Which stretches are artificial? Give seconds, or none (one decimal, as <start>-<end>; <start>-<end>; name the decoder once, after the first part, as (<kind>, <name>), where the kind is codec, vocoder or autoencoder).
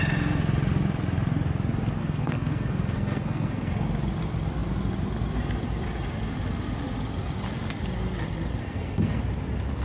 2.0-3.9 (codec, SNAC); 8.6-9.2